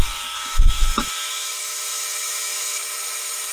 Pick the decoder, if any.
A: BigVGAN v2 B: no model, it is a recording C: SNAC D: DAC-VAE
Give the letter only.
D